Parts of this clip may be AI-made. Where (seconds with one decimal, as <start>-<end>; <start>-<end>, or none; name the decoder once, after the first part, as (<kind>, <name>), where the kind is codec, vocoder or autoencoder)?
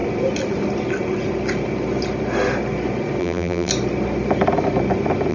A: 3.2-3.7 (vocoder, BigVGAN v2)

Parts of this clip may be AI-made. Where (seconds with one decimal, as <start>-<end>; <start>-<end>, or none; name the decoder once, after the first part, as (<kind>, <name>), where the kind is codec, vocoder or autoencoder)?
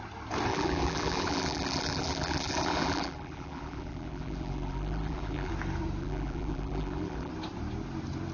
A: 0.5-5.5 (vocoder, BigVGAN v2); 6.0-7.3